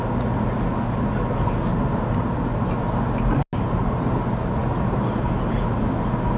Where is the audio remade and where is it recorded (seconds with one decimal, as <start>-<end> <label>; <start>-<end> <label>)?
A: 0.0-4.6 recorded; 4.6-5.8 remade; 5.8-6.4 recorded

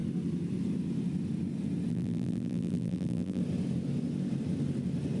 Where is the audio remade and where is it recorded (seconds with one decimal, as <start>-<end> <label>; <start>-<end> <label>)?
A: 0.0-1.9 recorded; 1.9-3.4 remade; 3.4-5.2 recorded

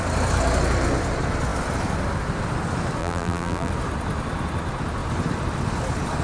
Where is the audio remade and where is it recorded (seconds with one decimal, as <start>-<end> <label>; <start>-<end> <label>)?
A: 0.0-3.0 recorded; 3.0-3.7 remade; 3.7-6.2 recorded

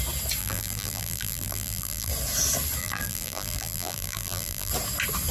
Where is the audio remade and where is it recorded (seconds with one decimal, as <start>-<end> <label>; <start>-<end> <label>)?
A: 0.0-0.4 recorded; 0.4-2.1 remade; 2.1-2.8 recorded; 2.8-4.7 remade; 4.7-5.3 recorded

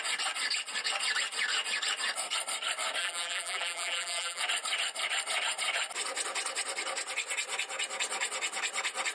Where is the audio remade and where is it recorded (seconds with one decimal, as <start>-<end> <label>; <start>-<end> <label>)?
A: 0.0-3.0 recorded; 3.0-4.4 remade; 4.4-9.1 recorded

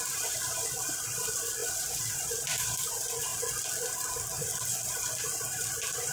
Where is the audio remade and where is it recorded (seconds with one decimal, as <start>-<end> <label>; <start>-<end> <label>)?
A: 0.0-3.3 remade; 3.3-4.4 recorded; 4.4-6.1 remade